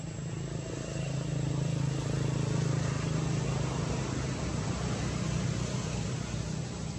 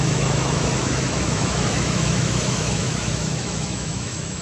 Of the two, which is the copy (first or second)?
second